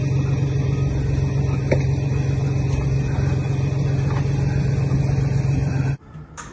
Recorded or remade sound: recorded